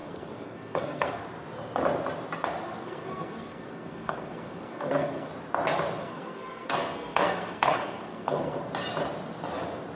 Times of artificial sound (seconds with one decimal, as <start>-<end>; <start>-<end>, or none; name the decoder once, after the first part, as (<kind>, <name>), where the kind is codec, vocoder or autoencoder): 0.0-1.2 (codec, SNAC); 2.8-5.3; 6.0-8.7